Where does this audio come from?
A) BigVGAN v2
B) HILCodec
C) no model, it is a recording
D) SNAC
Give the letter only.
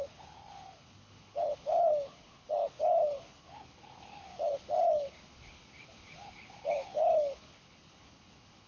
B